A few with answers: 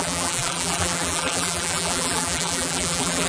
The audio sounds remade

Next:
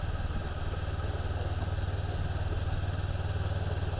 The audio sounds recorded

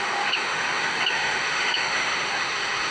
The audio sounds remade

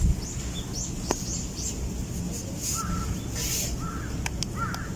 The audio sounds recorded